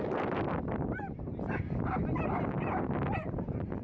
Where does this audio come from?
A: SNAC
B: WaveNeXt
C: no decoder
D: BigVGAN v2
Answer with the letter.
C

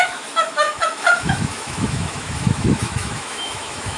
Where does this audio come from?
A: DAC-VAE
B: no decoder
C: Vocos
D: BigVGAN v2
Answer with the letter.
A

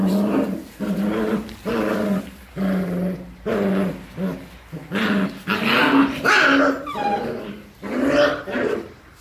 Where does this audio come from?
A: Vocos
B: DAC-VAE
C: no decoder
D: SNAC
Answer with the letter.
C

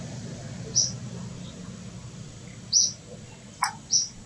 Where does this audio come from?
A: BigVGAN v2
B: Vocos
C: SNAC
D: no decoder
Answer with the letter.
D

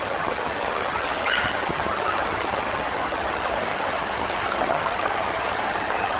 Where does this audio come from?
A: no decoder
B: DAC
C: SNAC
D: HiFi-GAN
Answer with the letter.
D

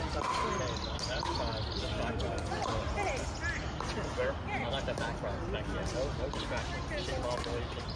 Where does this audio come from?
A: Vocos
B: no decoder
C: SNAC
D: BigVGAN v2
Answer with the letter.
B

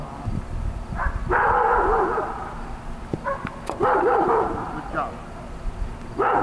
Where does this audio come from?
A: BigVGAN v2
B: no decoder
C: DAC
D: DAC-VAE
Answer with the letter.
B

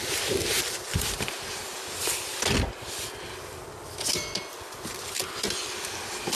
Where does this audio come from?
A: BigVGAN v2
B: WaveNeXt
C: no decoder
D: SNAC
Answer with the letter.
C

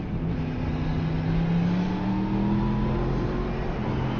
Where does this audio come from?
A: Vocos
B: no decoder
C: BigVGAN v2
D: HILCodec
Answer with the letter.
B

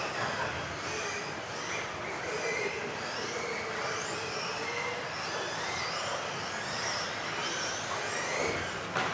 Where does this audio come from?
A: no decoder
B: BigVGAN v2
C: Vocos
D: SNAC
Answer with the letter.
A